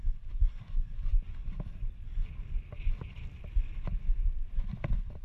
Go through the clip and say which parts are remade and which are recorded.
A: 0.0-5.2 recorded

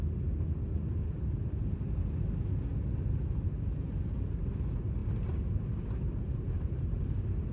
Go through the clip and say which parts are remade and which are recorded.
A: 0.0-5.0 recorded; 5.0-7.5 remade

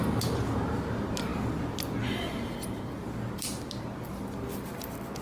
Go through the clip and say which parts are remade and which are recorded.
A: 0.0-5.2 recorded